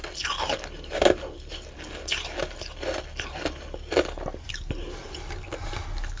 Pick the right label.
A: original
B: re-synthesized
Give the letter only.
A